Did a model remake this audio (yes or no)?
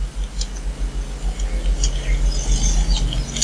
no